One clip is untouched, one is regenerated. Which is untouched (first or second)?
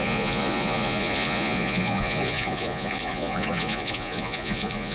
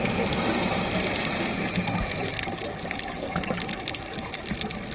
second